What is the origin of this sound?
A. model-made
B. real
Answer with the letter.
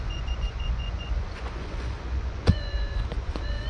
A